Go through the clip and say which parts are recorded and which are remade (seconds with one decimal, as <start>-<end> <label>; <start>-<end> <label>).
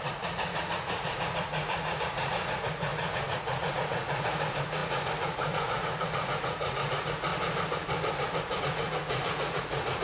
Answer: 0.0-7.3 remade; 7.3-8.6 recorded; 8.6-10.0 remade